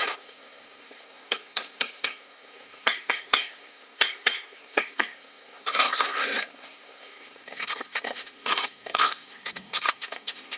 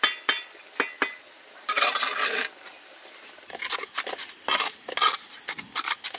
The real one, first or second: second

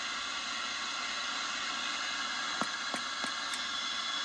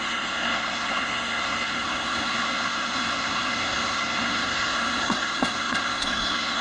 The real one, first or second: first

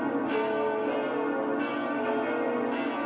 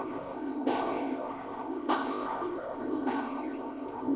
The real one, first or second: first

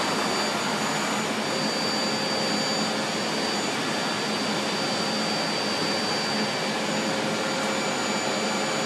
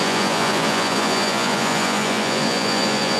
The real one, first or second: first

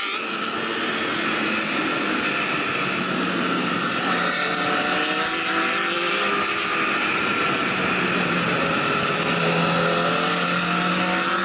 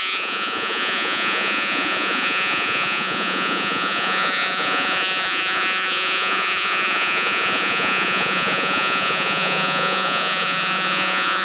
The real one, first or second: first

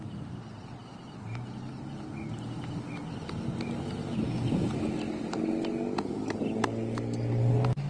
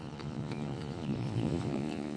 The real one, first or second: first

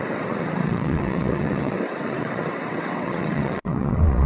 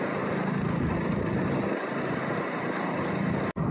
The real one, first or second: second